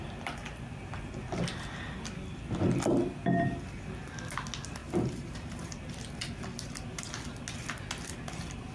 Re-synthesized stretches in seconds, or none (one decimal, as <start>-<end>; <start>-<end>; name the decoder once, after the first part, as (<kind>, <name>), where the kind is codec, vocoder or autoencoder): 4.8-5.9 (vocoder, BigVGAN v2)